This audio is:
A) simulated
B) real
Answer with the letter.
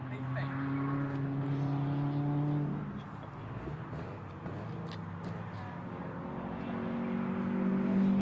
B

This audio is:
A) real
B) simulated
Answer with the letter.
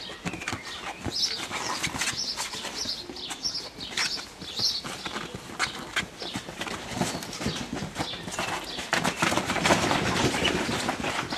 A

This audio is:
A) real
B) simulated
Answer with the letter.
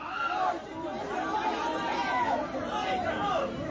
A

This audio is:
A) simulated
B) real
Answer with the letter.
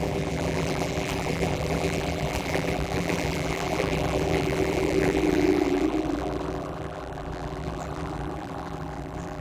A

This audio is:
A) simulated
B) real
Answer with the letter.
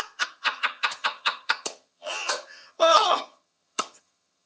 A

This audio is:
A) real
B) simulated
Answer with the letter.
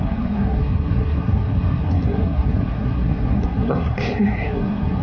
B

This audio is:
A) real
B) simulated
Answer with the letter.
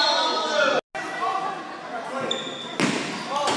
A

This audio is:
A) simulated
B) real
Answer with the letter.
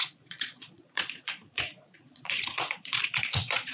A